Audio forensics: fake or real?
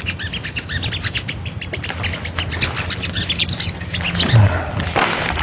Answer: real